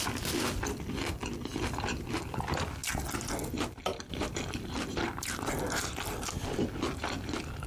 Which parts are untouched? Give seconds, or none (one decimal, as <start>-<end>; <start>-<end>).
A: 0.0-7.7